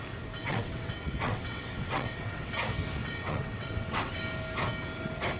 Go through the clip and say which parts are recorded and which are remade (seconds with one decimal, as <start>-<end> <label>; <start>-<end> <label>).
0.0-0.4 recorded; 0.4-2.5 remade; 2.5-3.0 recorded; 3.0-4.2 remade; 4.2-5.4 recorded